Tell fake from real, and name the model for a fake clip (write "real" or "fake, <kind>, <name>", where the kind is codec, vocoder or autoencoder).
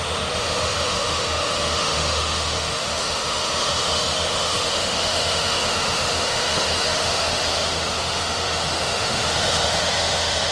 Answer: fake, autoencoder, DAC-VAE